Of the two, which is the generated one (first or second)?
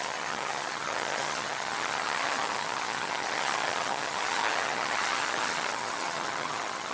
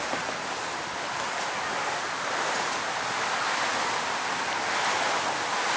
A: first